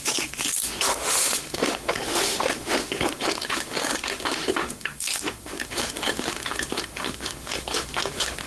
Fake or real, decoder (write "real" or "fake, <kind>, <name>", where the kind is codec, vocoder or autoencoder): fake, autoencoder, DAC-VAE